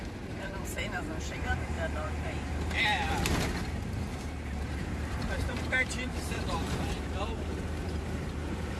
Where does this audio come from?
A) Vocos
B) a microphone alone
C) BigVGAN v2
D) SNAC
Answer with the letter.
C